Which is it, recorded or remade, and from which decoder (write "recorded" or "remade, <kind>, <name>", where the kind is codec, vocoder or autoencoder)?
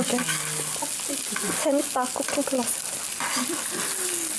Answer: recorded